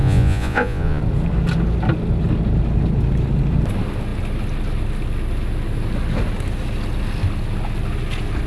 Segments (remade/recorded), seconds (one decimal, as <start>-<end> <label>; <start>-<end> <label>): 0.0-1.0 remade; 1.0-8.5 recorded